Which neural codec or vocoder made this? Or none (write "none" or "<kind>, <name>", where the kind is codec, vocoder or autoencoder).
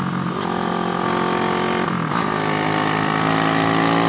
none